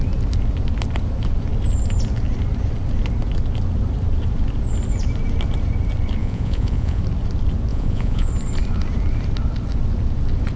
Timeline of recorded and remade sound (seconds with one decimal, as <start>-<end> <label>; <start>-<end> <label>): 0.0-6.2 recorded; 6.2-7.0 remade; 7.0-7.7 recorded; 7.7-8.3 remade; 8.3-10.6 recorded